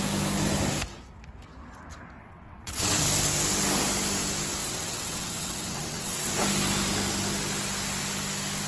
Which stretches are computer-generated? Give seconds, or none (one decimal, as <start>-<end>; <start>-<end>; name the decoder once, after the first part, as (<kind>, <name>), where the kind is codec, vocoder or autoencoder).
2.2-3.0 (vocoder, WaveNeXt); 4.6-6.3